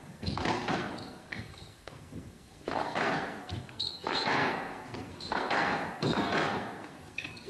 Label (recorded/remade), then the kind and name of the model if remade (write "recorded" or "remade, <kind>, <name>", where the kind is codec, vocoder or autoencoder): remade, codec, SNAC